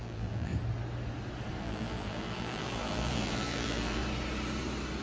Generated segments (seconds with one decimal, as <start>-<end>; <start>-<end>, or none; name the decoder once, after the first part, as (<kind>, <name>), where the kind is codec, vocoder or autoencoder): 0.0-0.5 (vocoder, BigVGAN v2); 1.6-4.0